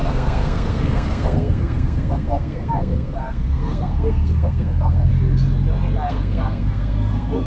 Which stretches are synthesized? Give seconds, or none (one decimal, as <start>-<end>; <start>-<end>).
0.0-5.1; 6.1-7.5